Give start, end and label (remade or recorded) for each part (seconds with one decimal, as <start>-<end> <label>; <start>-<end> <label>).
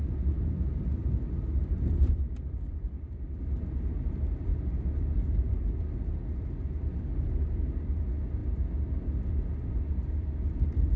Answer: 0.0-4.5 remade; 4.5-5.7 recorded; 5.7-11.0 remade